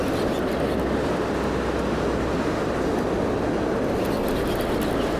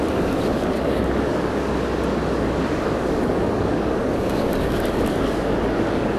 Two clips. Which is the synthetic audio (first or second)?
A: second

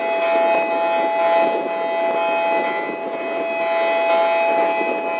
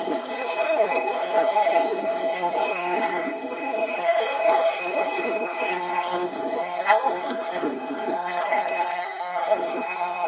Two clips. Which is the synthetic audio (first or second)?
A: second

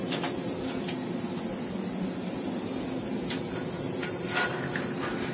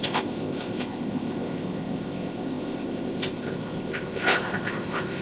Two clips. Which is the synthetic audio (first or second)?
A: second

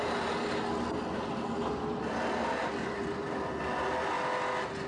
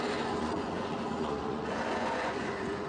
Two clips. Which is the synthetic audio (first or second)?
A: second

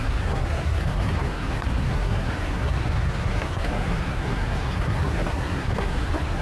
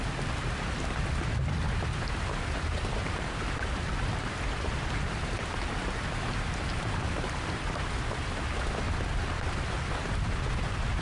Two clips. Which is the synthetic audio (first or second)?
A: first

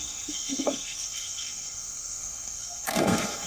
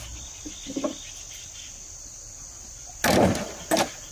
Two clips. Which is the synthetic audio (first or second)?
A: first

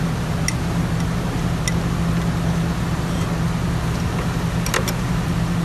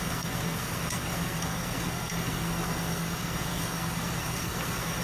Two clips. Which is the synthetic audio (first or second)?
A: second